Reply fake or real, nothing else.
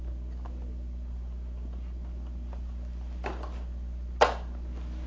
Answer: real